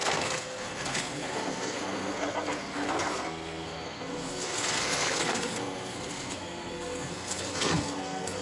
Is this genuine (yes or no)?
no